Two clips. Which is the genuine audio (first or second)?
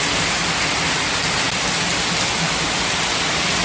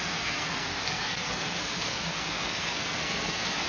first